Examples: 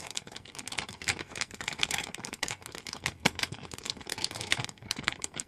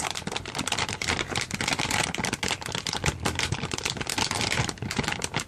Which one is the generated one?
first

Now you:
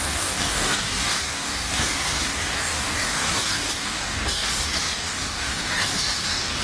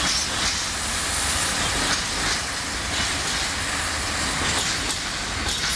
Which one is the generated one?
first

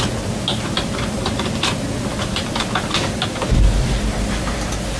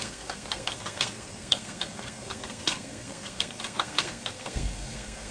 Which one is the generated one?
second